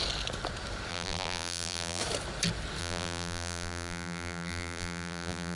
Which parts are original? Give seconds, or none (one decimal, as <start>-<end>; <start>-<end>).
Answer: 0.0-0.9; 2.0-2.8